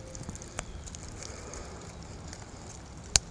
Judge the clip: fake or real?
real